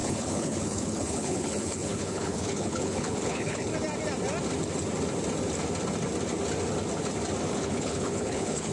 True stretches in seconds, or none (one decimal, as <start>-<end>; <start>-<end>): 3.7-7.5